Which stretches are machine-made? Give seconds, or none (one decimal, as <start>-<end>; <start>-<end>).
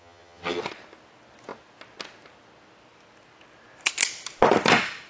0.0-0.6